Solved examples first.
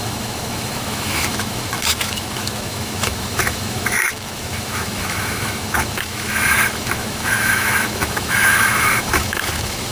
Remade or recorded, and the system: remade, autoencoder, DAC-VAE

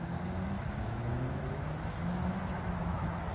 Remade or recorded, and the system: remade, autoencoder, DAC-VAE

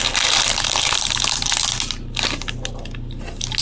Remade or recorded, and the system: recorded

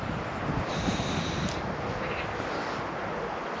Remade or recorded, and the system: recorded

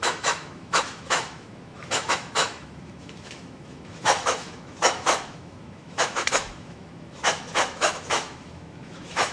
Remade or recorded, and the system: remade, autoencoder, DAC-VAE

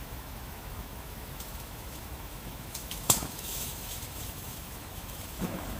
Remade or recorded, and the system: remade, autoencoder, DAC-VAE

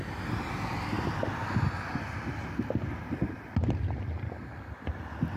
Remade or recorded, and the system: recorded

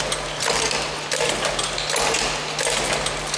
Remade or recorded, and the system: recorded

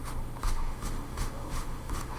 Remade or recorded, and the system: remade, autoencoder, DAC-VAE